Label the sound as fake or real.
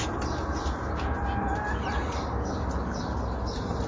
real